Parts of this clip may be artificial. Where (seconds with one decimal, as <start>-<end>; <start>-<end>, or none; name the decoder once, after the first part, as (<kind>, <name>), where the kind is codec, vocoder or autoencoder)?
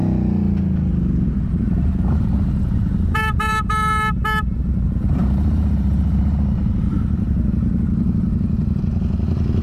1.5-6.2 (vocoder, BigVGAN v2); 6.9-8.8